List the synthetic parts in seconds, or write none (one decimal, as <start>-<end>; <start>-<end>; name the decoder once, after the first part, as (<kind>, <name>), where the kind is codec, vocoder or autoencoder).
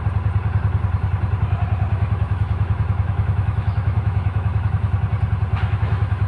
1.9-4.7 (autoencoder, DAC-VAE); 5.5-6.3